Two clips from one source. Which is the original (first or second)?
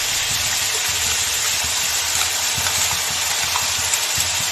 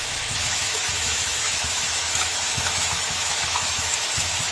first